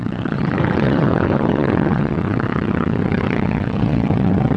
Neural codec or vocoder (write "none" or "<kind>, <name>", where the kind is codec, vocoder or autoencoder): vocoder, WaveNeXt